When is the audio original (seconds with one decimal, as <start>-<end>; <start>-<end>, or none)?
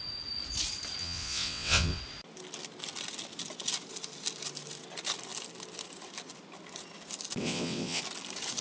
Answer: 0.0-1.0; 2.0-7.4; 8.0-8.6